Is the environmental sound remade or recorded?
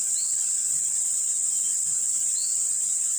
recorded